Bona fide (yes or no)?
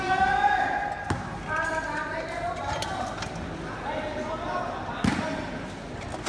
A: yes